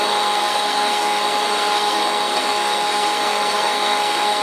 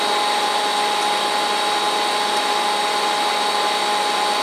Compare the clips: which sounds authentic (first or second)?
second